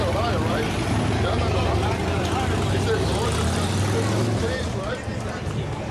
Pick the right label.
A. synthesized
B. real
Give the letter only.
B